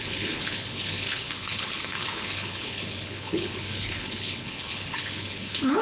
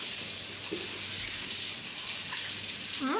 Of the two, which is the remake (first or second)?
first